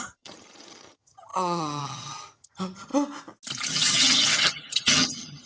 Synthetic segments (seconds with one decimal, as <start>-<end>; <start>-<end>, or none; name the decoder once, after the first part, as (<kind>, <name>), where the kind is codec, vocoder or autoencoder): 0.0-2.9 (vocoder, HiFi-GAN); 3.7-5.5